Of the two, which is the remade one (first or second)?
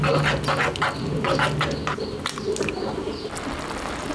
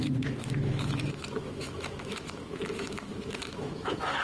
second